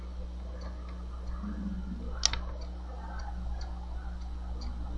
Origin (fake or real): real